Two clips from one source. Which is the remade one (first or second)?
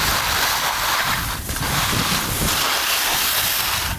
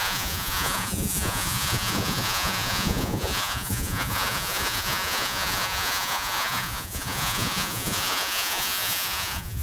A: second